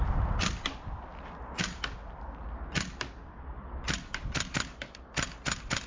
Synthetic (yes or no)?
no